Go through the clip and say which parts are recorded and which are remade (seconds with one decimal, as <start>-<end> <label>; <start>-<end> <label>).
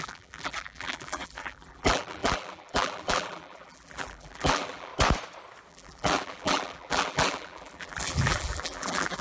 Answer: 0.0-4.9 remade; 4.9-5.7 recorded; 5.7-9.2 remade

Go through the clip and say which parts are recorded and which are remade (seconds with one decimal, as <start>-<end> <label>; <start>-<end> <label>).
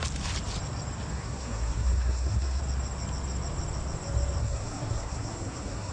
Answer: 0.0-1.1 recorded; 1.1-2.6 remade; 2.6-4.4 recorded; 4.4-5.9 remade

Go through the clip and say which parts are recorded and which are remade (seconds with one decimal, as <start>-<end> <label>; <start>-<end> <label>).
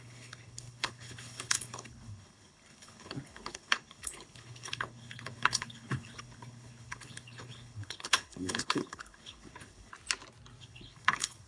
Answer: 0.0-9.9 remade; 9.9-10.6 recorded; 10.6-11.5 remade